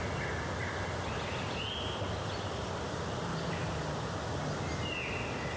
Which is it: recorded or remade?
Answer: recorded